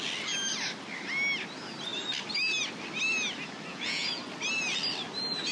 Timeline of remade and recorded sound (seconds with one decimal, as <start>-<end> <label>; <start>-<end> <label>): 0.0-3.7 recorded; 3.7-4.2 remade; 4.2-5.5 recorded